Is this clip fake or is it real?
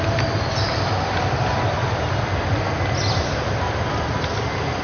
real